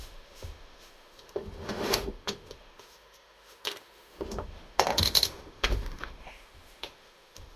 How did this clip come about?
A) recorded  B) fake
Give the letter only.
B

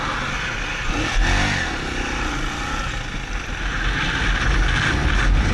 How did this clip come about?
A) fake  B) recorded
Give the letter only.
B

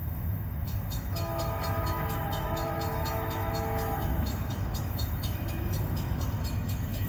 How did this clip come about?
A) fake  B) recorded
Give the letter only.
A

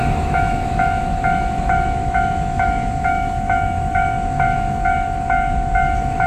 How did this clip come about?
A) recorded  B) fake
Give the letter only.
B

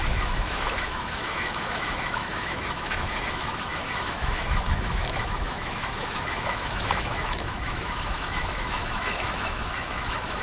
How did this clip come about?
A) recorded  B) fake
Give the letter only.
B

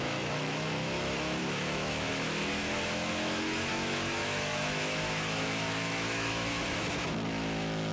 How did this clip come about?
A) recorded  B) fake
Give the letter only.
B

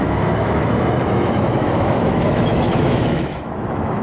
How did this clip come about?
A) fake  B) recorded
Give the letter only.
A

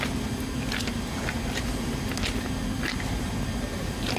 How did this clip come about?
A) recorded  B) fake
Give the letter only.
A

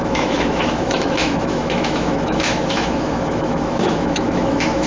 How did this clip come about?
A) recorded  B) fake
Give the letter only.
B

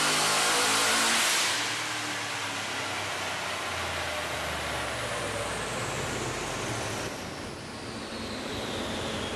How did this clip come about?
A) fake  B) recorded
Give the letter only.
B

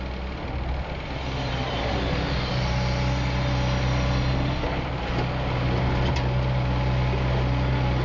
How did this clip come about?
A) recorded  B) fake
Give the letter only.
A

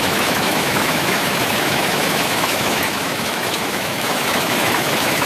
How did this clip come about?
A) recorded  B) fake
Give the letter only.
B